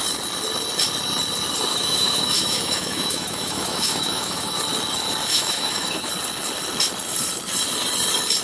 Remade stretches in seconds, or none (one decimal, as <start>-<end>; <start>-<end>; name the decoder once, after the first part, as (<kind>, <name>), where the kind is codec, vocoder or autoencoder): 1.7-4.6 (autoencoder, DAC-VAE); 5.3-6.1